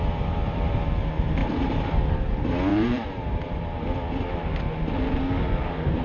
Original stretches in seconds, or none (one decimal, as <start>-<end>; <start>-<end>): 0.0-1.4; 2.0-2.7; 3.6-6.0